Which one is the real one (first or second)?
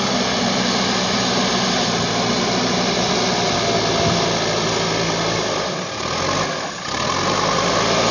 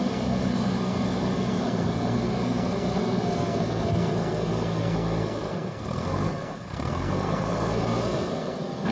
first